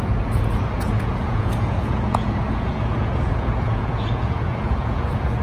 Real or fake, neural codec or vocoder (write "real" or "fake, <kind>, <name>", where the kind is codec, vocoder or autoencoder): fake, vocoder, Vocos